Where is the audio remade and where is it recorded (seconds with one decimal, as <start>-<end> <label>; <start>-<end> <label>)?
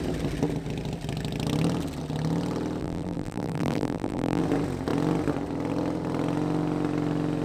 0.0-2.8 recorded; 2.8-4.4 remade; 4.4-7.4 recorded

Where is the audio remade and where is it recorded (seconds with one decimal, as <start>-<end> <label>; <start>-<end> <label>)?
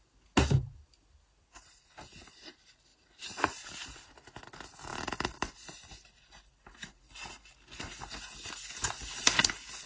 0.0-2.9 recorded; 2.9-4.1 remade; 4.1-4.9 recorded; 4.9-7.0 remade; 7.0-9.9 recorded